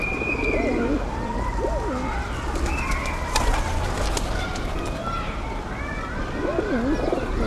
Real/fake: real